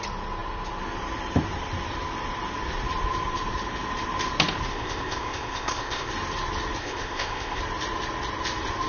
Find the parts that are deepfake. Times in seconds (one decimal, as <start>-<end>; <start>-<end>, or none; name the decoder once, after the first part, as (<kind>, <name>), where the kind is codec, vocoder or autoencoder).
4.7-6.1 (codec, ZipCodec); 6.8-7.6